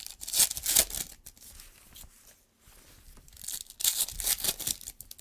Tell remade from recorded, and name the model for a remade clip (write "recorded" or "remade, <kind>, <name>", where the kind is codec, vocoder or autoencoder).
recorded